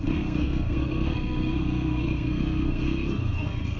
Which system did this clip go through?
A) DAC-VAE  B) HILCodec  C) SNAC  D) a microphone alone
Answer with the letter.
C